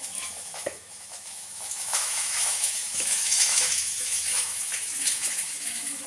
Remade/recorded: remade